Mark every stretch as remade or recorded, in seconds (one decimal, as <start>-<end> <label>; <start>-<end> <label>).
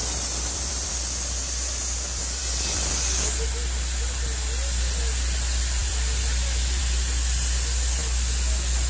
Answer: 0.0-0.9 remade; 0.9-2.4 recorded; 2.4-2.9 remade; 2.9-5.8 recorded; 5.8-6.8 remade; 6.8-8.9 recorded